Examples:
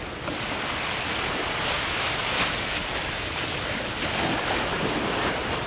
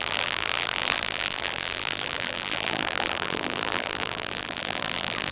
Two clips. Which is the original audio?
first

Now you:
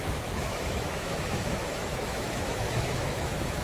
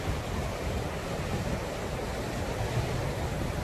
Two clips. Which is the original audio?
second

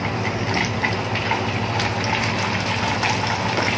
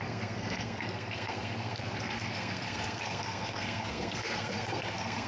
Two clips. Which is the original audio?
first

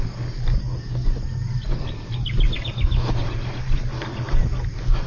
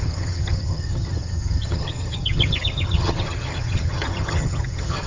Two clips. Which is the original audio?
first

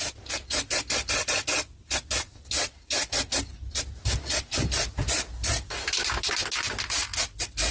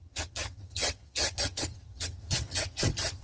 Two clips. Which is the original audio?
first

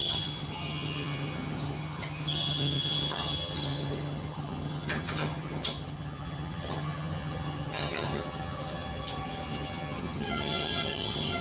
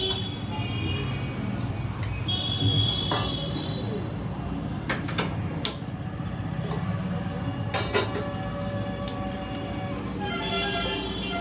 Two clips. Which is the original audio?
second